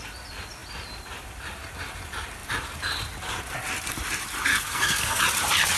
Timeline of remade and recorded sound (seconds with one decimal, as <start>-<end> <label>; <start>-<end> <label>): 0.0-4.5 recorded; 4.5-5.2 remade; 5.2-5.8 recorded